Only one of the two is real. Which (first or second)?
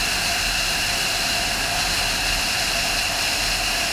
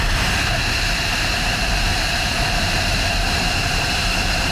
first